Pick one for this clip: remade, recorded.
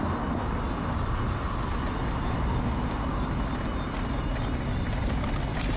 recorded